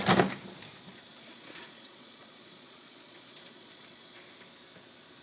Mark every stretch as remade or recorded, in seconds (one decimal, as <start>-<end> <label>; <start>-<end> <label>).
0.0-1.1 recorded; 1.1-4.2 remade; 4.2-5.2 recorded